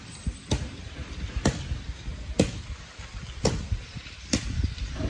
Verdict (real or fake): real